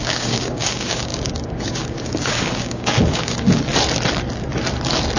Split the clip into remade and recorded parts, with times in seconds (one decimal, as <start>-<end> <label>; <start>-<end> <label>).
0.0-3.7 remade; 3.7-5.2 recorded